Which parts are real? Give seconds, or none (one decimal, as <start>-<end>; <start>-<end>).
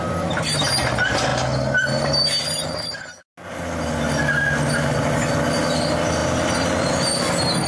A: 0.0-7.7